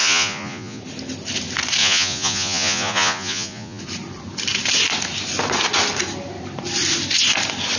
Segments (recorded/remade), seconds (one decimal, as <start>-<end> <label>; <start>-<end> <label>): 0.0-0.8 remade; 0.8-1.8 recorded; 1.8-3.8 remade; 3.8-7.8 recorded